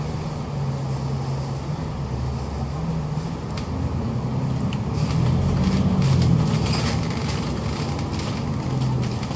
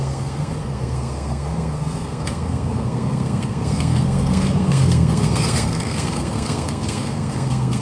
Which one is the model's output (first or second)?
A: second